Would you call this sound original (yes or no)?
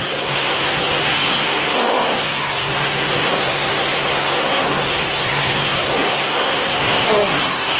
no